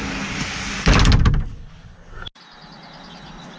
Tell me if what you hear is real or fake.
real